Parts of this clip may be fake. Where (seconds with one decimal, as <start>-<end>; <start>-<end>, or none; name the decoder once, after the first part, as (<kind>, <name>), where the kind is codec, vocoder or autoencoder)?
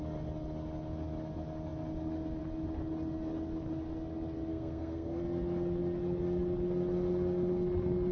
4.5-5.2 (codec, SNAC)